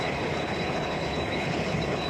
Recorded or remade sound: remade